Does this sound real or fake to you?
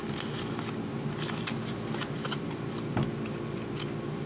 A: real